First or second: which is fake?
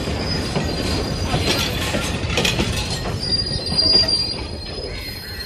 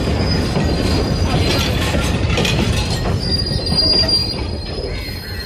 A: first